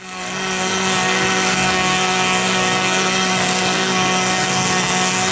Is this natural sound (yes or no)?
no